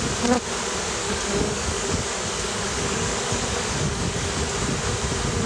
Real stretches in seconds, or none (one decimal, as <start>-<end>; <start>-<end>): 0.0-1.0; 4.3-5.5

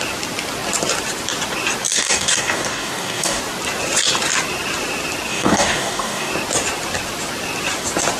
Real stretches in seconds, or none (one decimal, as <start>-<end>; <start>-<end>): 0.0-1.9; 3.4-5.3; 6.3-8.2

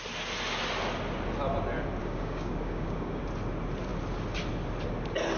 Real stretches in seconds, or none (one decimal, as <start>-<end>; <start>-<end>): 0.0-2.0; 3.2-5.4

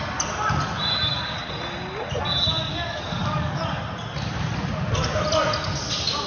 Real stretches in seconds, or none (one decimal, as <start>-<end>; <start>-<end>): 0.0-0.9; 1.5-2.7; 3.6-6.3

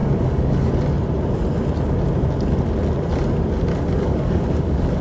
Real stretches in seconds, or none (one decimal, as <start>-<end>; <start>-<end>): 0.7-3.7